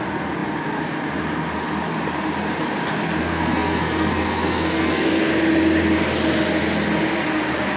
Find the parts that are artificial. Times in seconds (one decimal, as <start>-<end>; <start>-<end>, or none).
3.2-5.3